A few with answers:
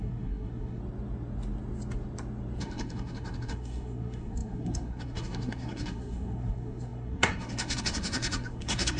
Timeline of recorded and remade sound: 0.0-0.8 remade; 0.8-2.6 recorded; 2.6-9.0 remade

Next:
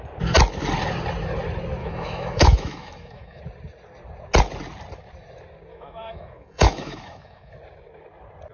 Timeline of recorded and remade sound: 0.0-1.8 recorded; 1.8-3.4 remade; 3.4-5.7 recorded; 5.7-7.5 remade; 7.5-8.5 recorded

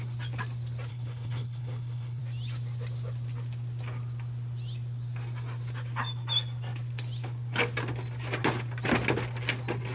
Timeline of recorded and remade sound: 0.0-0.9 recorded; 0.9-2.2 remade; 2.2-9.9 recorded

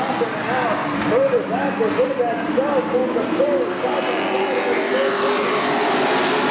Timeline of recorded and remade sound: 0.0-6.5 recorded

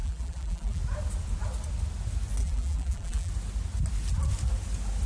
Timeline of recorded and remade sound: 0.0-0.8 remade; 0.8-2.4 recorded; 2.4-3.3 remade; 3.3-5.1 recorded

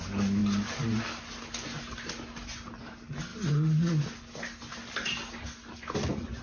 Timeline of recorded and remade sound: 0.0-6.4 recorded

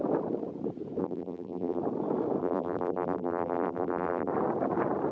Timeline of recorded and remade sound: 0.0-1.0 recorded; 1.0-1.8 remade; 1.8-2.4 recorded; 2.4-4.3 remade; 4.3-5.1 recorded

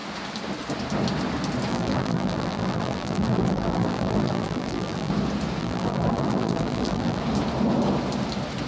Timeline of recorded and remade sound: 0.0-1.7 recorded; 1.7-5.1 remade; 5.1-5.6 recorded; 5.6-7.2 remade; 7.2-8.7 recorded